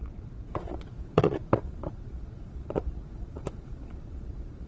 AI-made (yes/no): yes